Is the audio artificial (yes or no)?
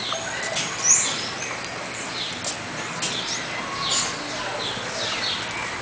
no